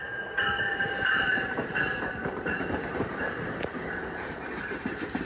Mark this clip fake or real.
fake